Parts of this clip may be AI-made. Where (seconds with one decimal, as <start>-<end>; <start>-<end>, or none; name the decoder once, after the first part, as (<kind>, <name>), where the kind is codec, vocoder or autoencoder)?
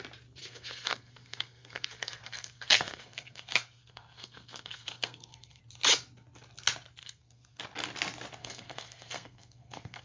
0.4-5.6 (codec, SNAC); 7.0-7.6; 8.4-10.0